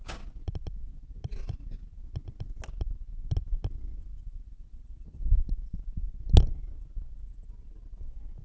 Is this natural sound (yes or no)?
yes